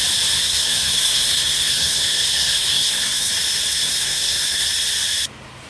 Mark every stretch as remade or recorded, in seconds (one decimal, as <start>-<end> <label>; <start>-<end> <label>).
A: 0.0-0.4 recorded; 0.4-3.3 remade; 3.3-3.7 recorded; 3.7-4.7 remade; 4.7-5.7 recorded